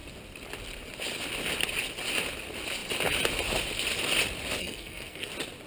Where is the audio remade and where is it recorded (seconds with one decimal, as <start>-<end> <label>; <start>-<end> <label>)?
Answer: 0.0-4.6 recorded; 4.6-5.3 remade; 5.3-5.7 recorded